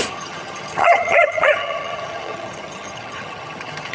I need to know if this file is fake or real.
fake